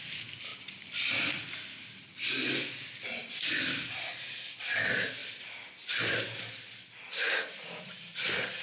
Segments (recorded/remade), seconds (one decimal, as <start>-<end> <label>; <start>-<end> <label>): 0.0-8.6 recorded